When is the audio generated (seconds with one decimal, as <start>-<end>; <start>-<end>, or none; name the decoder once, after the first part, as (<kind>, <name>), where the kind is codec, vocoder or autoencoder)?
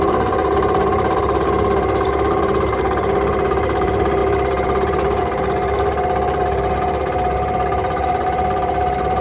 0.0-9.2 (vocoder, BigVGAN v2)